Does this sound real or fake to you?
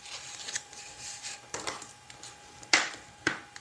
fake